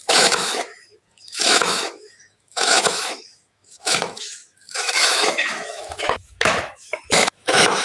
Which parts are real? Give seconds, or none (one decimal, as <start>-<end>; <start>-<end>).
none